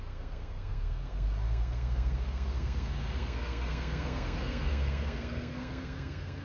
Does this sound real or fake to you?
fake